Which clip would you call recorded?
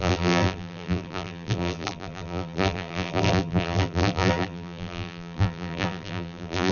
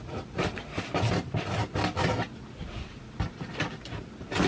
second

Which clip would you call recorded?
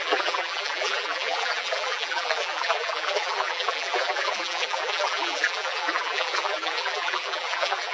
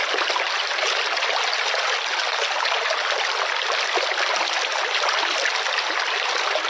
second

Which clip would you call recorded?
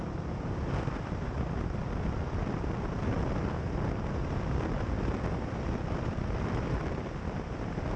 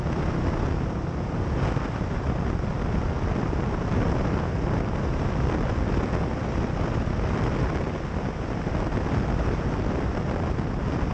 second